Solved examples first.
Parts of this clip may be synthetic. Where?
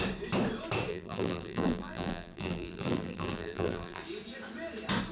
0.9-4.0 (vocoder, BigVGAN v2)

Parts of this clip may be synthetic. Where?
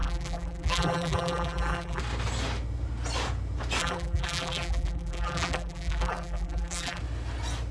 0.0-2.0 (vocoder, BigVGAN v2); 3.8-7.0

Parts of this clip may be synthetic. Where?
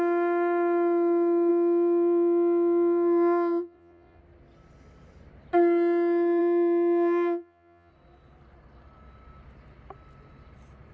1.5-4.2 (vocoder, Vocos); 6.4-7.9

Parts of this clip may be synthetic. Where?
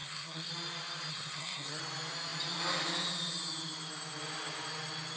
0.0-0.5 (codec, SNAC); 1.1-1.8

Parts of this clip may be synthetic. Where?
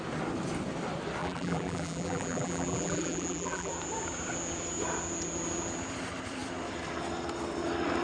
1.2-3.7 (vocoder, BigVGAN v2)